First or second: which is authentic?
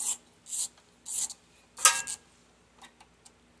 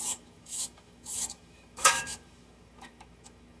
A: first